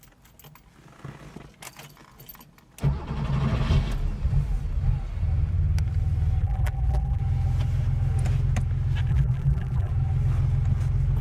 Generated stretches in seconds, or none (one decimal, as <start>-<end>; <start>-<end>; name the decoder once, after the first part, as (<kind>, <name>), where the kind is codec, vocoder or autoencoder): 6.4-7.2 (vocoder, BigVGAN v2); 9.1-9.9

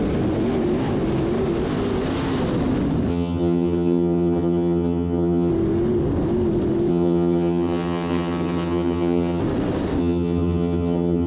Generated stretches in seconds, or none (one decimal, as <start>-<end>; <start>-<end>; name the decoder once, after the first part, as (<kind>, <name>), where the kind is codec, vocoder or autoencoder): 3.1-5.5 (vocoder, HiFi-GAN); 6.9-9.4; 10.0-11.3

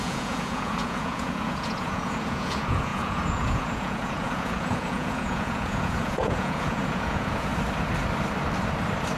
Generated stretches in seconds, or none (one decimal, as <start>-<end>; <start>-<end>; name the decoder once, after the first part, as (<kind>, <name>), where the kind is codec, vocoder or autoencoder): 0.0-7.5 (vocoder, Vocos)

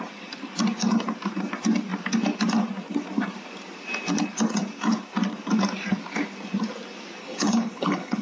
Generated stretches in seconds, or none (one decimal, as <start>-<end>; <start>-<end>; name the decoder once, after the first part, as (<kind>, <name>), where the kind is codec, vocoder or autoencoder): 7.2-8.2 (codec, HILCodec)